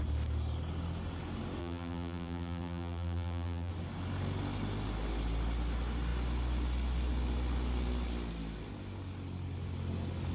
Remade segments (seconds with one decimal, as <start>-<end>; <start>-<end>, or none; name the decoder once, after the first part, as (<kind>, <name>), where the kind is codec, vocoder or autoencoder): 1.6-3.7 (vocoder, BigVGAN v2)